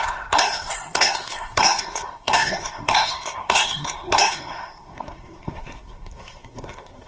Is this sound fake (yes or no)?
yes